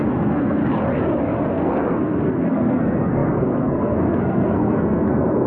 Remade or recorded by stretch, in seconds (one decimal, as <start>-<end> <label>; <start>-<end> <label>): 0.0-0.6 remade; 0.6-1.5 recorded; 1.5-5.5 remade